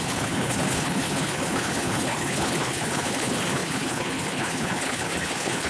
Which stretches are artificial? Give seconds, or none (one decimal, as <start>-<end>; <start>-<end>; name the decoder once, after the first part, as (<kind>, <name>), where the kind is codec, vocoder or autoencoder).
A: 0.0-5.7 (codec, HILCodec)